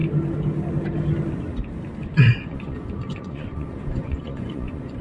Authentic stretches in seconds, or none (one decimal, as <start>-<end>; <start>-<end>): 0.0-2.0